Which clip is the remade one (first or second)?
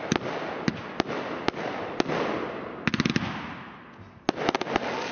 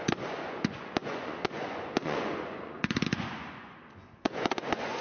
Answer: second